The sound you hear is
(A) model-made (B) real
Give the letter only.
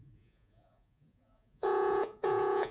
A